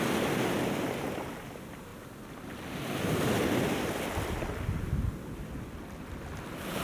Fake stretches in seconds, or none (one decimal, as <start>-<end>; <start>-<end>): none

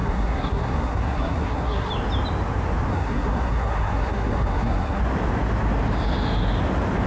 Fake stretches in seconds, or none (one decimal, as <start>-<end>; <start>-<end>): 0.0-1.9; 2.9-5.0

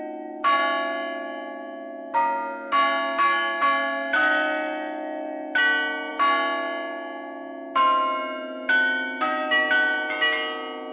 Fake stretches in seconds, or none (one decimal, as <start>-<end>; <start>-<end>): none

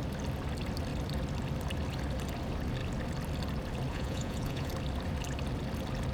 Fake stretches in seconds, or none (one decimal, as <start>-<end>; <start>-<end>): 3.9-4.7

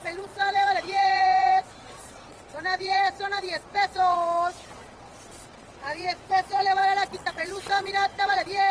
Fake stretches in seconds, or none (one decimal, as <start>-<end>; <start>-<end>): 0.0-6.8; 7.3-8.7

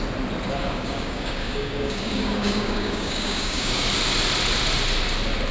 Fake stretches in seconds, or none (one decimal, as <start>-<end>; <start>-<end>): 0.6-3.9